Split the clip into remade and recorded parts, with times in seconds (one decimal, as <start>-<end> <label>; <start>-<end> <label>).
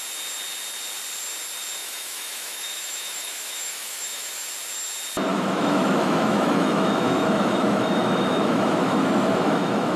0.0-1.8 recorded; 1.8-4.5 remade; 4.5-5.3 recorded; 5.3-10.0 remade